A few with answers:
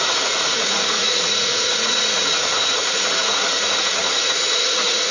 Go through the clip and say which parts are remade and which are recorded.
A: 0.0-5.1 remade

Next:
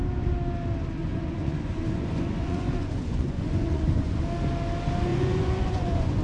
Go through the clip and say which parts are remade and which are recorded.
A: 0.0-1.0 recorded; 1.0-4.2 remade; 4.2-5.1 recorded; 5.1-6.2 remade

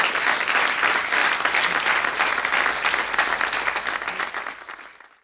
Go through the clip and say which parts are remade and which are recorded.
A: 0.0-5.2 recorded

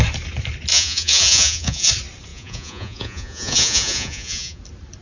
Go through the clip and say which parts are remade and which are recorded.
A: 0.0-0.7 recorded; 0.7-1.9 remade; 1.9-2.3 recorded; 2.3-4.6 remade; 4.6-5.0 recorded

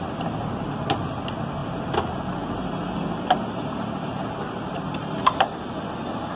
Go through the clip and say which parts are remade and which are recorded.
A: 0.0-6.4 recorded

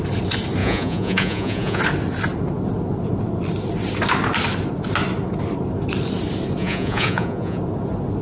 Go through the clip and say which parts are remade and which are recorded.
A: 0.0-0.6 recorded; 0.6-1.8 remade; 1.8-6.6 recorded; 6.6-7.6 remade; 7.6-8.2 recorded

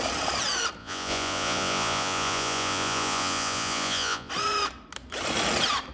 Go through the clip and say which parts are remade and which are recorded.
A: 0.0-0.8 recorded; 0.8-4.3 remade; 4.3-5.9 recorded

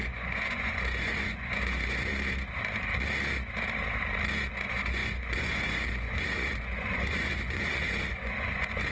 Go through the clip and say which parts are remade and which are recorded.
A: 0.0-2.1 remade; 2.1-4.5 recorded; 4.5-8.9 remade